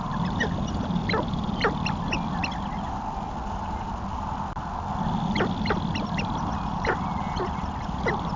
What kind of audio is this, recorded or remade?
recorded